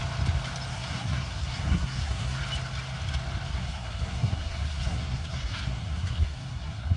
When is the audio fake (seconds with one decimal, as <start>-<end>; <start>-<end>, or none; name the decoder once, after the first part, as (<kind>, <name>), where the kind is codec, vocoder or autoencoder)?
0.7-2.4 (codec, SNAC); 3.5-7.0